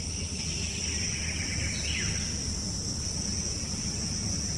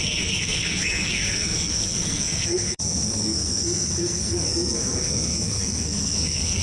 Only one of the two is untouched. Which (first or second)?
first